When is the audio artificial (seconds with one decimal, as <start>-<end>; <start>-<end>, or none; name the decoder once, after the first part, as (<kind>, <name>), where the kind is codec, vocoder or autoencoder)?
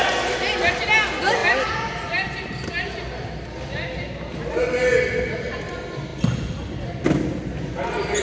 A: none